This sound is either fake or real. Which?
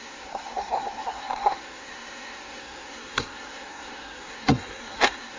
fake